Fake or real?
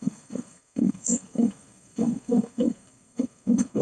fake